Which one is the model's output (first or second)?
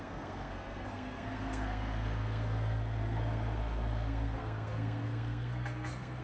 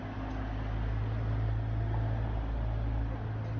first